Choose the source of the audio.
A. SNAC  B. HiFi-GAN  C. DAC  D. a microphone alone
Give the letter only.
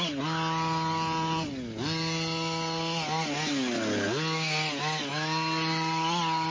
D